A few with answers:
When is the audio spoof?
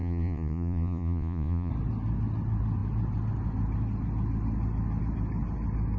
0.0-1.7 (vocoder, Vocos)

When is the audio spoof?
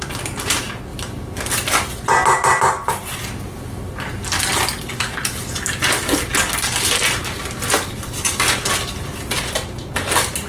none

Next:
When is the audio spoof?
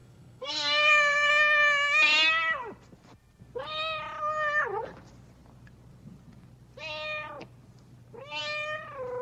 0.0-1.3 (codec, SNAC)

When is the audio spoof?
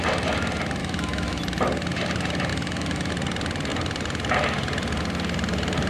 0.8-1.4 (autoencoder, DAC-VAE); 2.5-3.1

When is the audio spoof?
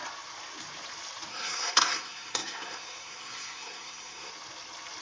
1.3-4.3 (codec, SNAC)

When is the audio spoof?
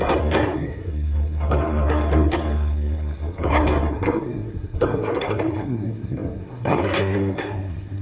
0.0-8.0 (codec, SNAC)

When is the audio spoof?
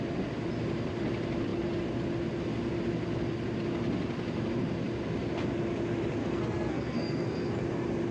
6.2-7.6 (codec, SNAC)